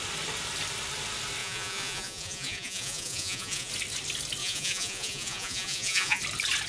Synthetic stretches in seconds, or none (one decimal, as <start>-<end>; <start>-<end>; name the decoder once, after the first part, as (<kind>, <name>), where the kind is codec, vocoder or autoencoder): 1.4-3.7 (vocoder, Vocos); 4.4-6.2